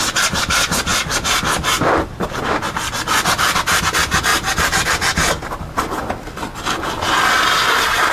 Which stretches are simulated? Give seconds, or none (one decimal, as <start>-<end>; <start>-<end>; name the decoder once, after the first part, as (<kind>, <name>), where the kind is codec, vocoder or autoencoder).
0.9-3.8 (vocoder, BigVGAN v2)